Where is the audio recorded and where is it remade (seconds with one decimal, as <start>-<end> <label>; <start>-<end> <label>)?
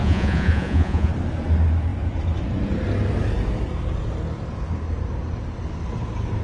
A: 0.0-1.1 remade; 1.1-6.4 recorded